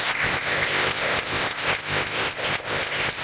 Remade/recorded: remade